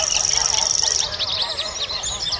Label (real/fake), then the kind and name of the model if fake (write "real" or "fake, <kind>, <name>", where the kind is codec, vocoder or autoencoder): real